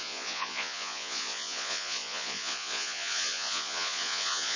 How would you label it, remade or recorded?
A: remade